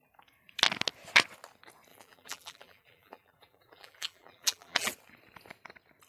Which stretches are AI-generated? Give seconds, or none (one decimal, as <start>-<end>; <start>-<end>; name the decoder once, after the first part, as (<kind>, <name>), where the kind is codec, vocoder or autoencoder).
1.9-4.9 (vocoder, BigVGAN v2)

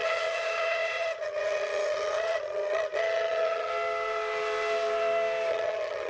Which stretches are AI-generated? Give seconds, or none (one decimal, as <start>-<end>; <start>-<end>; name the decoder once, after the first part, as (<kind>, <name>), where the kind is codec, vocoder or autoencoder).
0.0-3.7 (vocoder, HiFi-GAN); 5.5-6.1

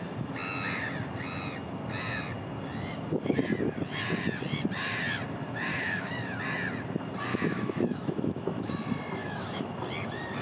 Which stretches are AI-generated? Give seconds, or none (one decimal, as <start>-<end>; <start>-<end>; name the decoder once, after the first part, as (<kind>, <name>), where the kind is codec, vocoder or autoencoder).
5.7-6.4 (autoencoder, DAC-VAE); 7.3-8.7; 9.2-9.7

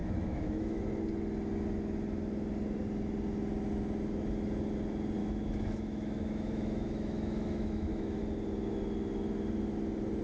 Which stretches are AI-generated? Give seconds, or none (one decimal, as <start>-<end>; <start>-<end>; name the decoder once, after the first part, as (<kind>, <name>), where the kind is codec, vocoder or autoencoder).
0.0-0.8 (autoencoder, DAC-VAE); 5.2-8.2

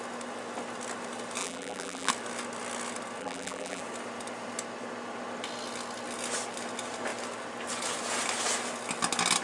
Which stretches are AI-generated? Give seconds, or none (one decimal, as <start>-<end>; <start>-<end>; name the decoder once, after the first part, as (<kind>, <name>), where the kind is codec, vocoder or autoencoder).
1.4-2.1 (vocoder, BigVGAN v2); 3.2-3.8

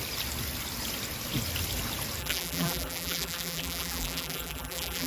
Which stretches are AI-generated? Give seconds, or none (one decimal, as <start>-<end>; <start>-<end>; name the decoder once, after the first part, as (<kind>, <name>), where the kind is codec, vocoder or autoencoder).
2.2-5.1 (vocoder, BigVGAN v2)

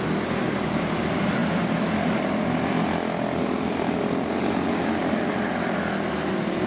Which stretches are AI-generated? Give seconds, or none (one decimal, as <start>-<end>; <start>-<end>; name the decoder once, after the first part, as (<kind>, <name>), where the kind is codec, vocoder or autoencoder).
none